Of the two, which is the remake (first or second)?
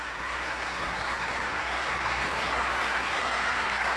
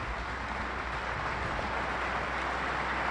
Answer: first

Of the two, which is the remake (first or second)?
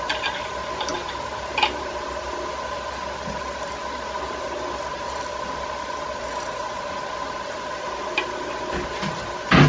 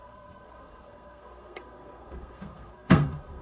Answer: second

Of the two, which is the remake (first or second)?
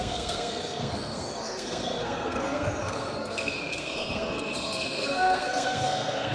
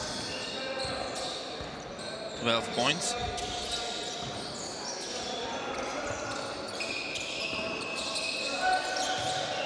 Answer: first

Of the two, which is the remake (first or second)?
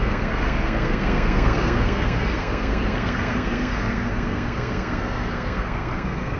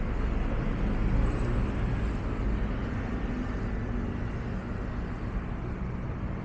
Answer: first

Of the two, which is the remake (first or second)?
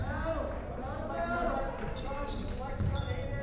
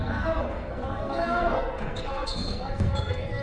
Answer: second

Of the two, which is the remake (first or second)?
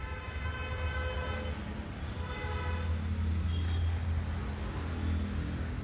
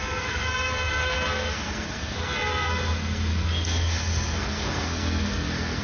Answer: second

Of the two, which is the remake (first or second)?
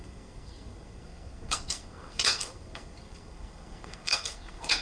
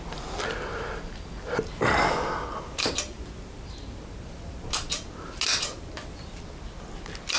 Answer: first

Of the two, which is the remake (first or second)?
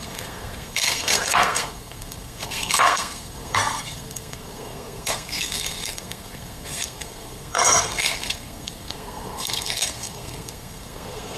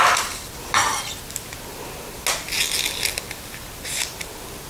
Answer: first